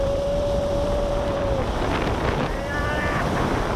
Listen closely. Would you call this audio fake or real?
fake